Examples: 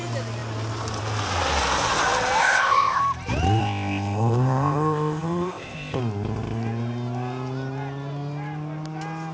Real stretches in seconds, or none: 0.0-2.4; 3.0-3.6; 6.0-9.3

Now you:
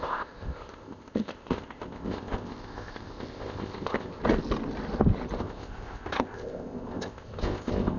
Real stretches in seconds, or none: 4.2-5.4

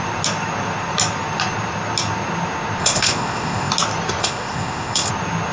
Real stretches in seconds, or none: 0.0-2.8; 3.7-4.2; 5.1-5.5

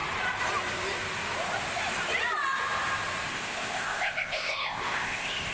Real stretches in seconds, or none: 0.0-3.3

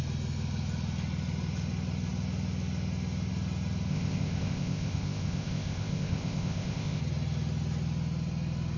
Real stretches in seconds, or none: 0.0-3.9; 7.0-8.8